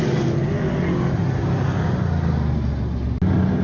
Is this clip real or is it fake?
real